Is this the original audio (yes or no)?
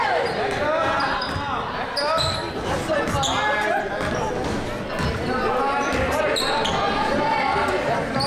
yes